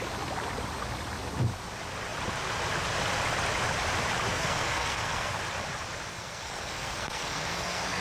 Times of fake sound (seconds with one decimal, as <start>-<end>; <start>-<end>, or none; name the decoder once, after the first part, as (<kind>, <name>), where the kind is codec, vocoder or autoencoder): 4.3-5.4 (codec, SNAC); 6.1-8.0